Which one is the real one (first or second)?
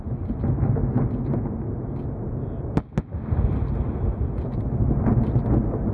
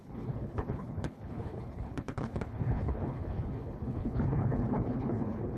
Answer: first